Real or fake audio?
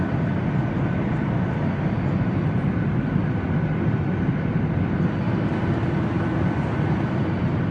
real